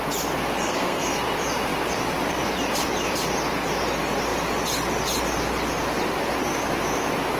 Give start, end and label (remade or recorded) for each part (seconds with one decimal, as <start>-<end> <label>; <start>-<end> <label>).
0.0-0.6 recorded; 0.6-1.2 remade; 1.2-7.4 recorded